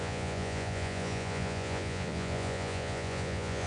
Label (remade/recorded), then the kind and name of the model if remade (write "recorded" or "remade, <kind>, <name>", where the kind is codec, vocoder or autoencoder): remade, vocoder, Vocos